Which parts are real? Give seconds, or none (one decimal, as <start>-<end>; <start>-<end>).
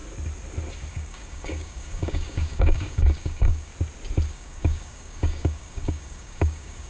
0.0-0.9; 3.7-4.3